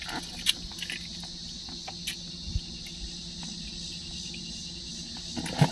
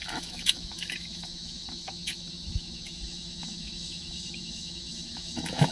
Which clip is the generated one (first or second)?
second